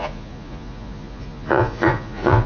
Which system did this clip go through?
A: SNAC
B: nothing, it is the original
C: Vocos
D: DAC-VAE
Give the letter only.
C